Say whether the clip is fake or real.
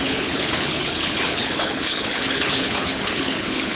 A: fake